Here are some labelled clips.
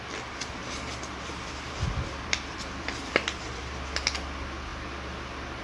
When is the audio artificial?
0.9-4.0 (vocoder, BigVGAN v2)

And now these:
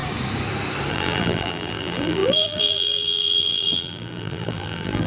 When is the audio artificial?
0.9-5.1 (vocoder, BigVGAN v2)

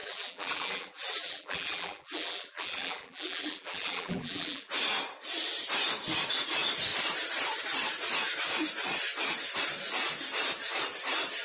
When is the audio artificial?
0.0-4.7 (vocoder, BigVGAN v2)

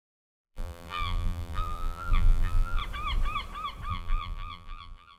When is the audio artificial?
0.0-2.8 (vocoder, BigVGAN v2); 3.9-5.2

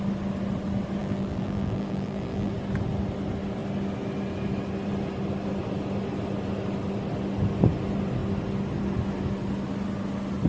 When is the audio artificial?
1.0-2.5 (vocoder, BigVGAN v2)